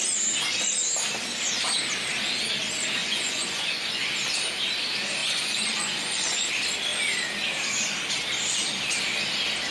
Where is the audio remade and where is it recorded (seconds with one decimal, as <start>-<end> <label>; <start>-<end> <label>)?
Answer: 0.0-3.0 recorded; 3.0-4.1 remade; 4.1-5.2 recorded; 5.2-6.5 remade; 6.5-9.7 recorded